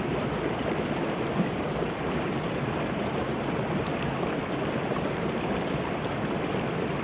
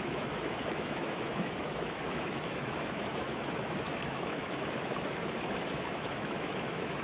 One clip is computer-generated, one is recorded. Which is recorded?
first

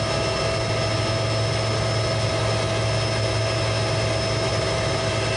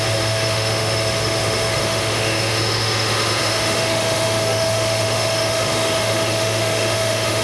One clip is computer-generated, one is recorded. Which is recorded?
first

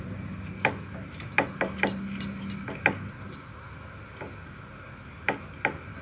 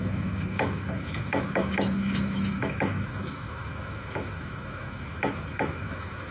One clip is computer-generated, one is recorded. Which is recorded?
first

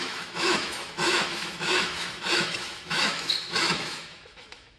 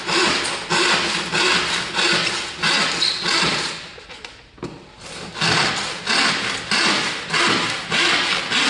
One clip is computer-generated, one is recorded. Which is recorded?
second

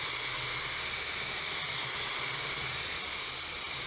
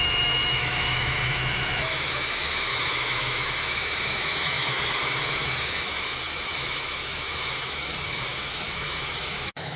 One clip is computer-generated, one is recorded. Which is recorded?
first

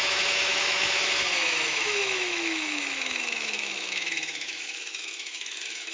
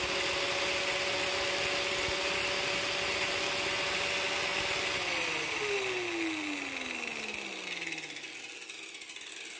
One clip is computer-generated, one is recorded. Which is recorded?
second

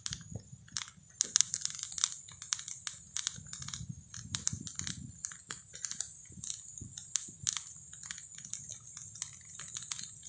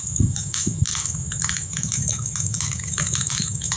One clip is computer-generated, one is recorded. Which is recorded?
first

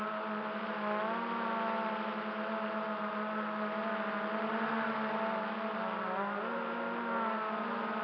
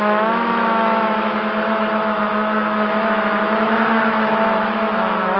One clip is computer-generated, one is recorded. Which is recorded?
first